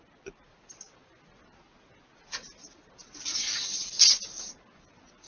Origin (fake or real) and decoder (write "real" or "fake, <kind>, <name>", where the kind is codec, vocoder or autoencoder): real